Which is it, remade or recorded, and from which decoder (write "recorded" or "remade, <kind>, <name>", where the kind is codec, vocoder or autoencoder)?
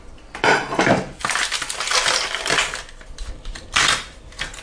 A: recorded